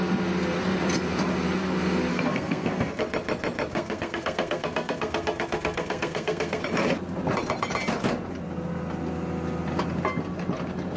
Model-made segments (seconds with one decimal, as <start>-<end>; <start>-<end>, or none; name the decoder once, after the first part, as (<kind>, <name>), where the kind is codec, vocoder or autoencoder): 2.1-3.0 (codec, SNAC); 3.7-6.6